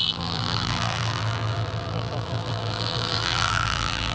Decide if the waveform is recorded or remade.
remade